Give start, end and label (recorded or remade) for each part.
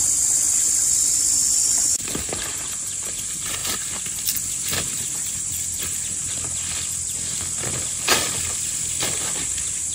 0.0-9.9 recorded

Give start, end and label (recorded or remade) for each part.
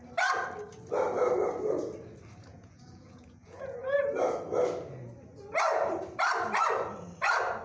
0.0-2.5 recorded; 2.5-4.1 remade; 4.1-7.6 recorded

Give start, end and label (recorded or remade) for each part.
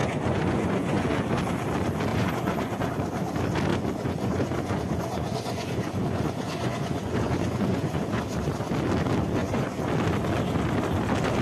0.0-1.4 remade; 1.4-2.1 recorded; 2.1-2.9 remade; 2.9-3.7 recorded; 3.7-8.2 remade; 8.2-9.4 recorded; 9.4-9.9 remade; 9.9-11.4 recorded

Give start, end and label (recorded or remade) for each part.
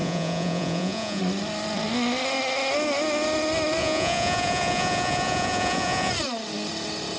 0.0-1.2 remade; 1.2-3.8 recorded; 3.8-6.1 remade; 6.1-7.2 recorded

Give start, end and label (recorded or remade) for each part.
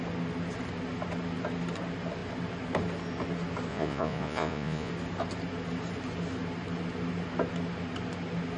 0.0-3.7 recorded; 3.7-4.9 remade; 4.9-8.6 recorded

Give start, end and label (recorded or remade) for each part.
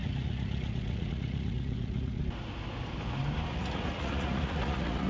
0.0-2.2 remade; 2.2-3.5 recorded; 3.5-5.1 remade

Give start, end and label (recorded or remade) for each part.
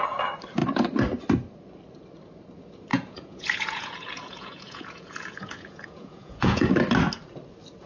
0.0-2.9 recorded; 2.9-6.7 remade; 6.7-7.9 recorded